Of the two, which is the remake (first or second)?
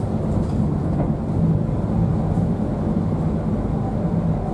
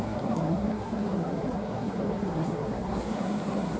second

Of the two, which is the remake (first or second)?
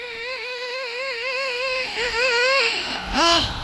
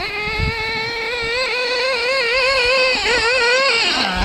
first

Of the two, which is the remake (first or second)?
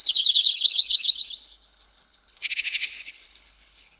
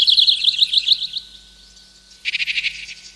first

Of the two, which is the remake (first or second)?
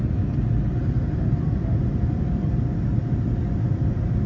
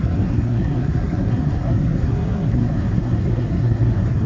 second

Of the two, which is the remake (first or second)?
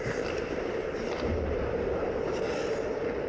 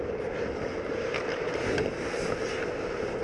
first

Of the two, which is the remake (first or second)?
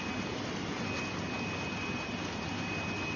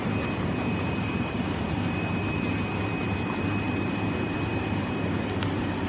second